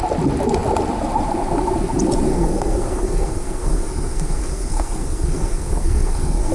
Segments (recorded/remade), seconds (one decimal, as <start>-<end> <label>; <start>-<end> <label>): 0.0-2.3 recorded; 2.3-6.5 remade